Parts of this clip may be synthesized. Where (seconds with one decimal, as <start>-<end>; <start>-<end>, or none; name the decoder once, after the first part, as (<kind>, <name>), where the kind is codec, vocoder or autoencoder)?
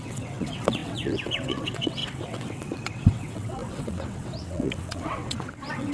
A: 0.0-5.9 (vocoder, WaveNeXt)